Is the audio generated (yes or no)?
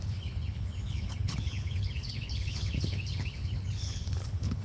yes